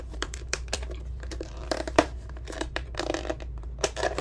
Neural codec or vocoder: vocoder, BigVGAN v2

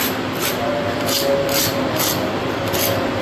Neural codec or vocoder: none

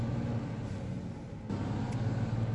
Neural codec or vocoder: none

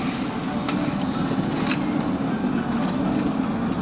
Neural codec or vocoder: none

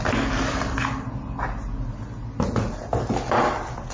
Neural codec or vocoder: none